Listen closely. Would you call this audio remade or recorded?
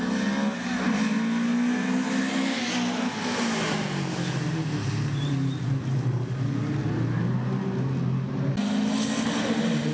recorded